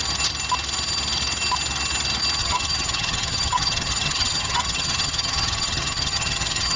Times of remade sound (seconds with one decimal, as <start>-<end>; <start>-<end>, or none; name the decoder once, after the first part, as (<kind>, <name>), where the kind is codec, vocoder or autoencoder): 2.4-6.8 (vocoder, HiFi-GAN)